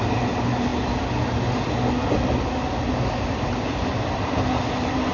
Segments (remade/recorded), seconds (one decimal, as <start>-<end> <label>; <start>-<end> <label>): 0.0-0.7 remade; 0.7-3.4 recorded; 3.4-5.1 remade